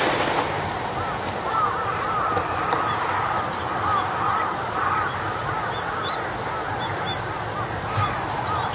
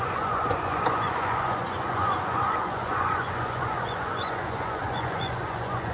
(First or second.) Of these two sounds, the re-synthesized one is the second